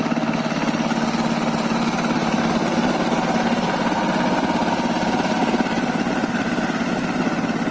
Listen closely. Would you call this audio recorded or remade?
recorded